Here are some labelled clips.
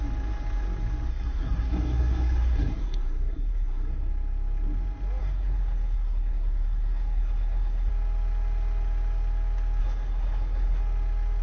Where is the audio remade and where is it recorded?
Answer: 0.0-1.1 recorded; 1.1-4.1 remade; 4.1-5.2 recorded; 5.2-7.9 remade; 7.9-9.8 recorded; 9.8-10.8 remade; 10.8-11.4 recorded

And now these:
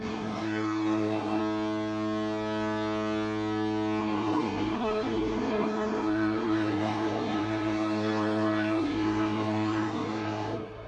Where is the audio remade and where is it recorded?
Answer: 0.0-1.4 remade; 1.4-4.0 recorded; 4.0-10.9 remade

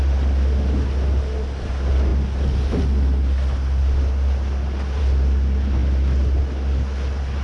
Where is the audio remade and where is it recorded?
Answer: 0.0-7.4 recorded

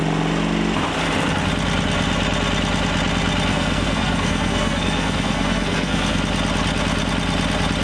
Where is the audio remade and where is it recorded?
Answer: 0.0-3.5 recorded; 3.5-6.2 remade; 6.2-7.8 recorded

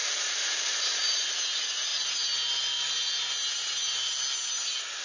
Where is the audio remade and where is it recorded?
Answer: 0.0-5.0 recorded

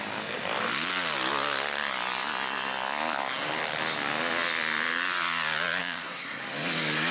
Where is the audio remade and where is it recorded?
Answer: 0.0-5.8 recorded; 5.8-6.4 remade; 6.4-7.1 recorded

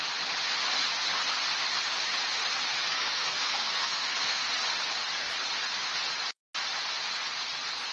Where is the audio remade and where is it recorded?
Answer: 0.0-2.7 recorded; 2.7-4.5 remade; 4.5-7.9 recorded

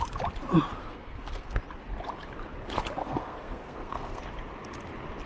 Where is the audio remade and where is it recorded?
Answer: 0.0-0.8 recorded; 0.8-1.6 remade; 1.6-3.0 recorded; 3.0-4.2 remade; 4.2-5.3 recorded